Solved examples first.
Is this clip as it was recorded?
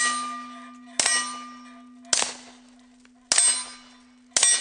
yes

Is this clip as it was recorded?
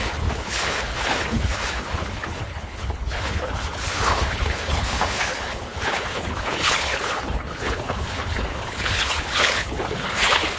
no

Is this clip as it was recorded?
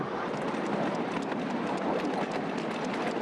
yes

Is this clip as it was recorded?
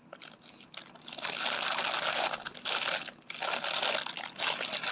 yes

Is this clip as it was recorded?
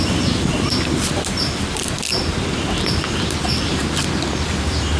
yes